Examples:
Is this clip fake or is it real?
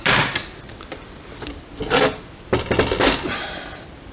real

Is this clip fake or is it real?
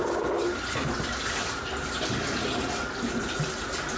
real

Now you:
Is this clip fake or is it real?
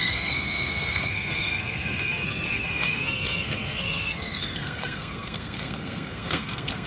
fake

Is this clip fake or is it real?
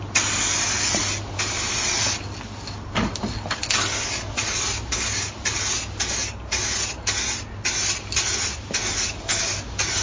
real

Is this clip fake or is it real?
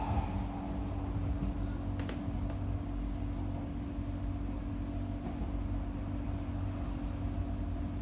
real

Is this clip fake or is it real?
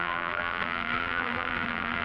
fake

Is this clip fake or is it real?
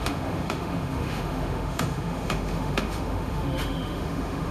fake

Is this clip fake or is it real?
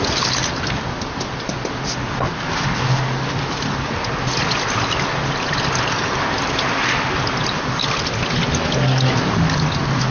real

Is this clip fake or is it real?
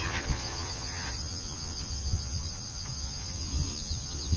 fake